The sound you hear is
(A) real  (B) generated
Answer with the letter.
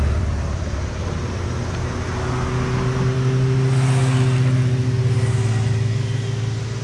A